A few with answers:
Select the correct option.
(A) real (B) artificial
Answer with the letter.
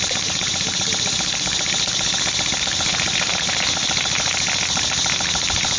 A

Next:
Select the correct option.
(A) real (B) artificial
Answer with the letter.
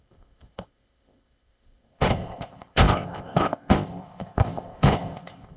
B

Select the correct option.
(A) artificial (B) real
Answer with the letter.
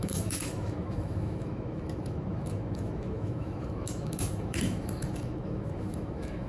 A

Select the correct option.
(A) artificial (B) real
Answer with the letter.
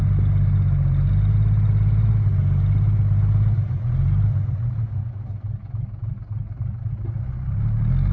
B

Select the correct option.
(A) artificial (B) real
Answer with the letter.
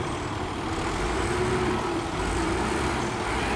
A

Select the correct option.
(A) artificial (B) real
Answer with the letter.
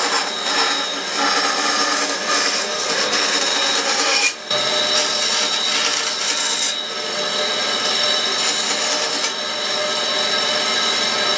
B